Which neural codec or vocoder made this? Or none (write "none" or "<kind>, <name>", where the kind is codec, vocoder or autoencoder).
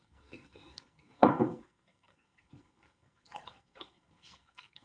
codec, SNAC